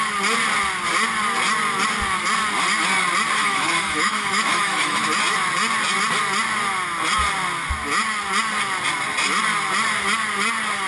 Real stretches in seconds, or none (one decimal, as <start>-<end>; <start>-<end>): 0.0-3.4; 5.0-10.9